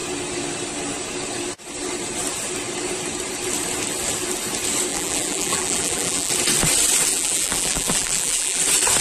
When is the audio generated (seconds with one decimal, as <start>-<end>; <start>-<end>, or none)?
4.9-6.3; 7.1-8.6